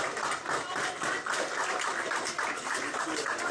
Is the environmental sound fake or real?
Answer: real